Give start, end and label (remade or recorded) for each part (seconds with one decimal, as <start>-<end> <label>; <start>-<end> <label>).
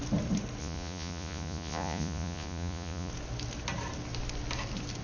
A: 0.0-0.6 recorded; 0.6-3.1 remade; 3.1-5.0 recorded